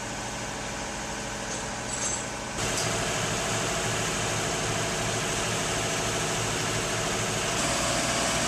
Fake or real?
real